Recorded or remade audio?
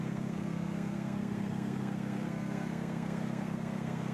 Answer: remade